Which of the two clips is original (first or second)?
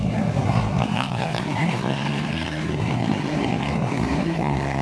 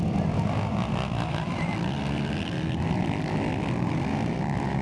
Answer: second